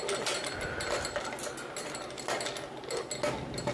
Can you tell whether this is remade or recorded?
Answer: recorded